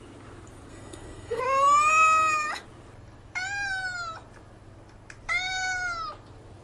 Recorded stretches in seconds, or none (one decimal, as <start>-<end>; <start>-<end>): 0.0-0.7; 1.4-6.6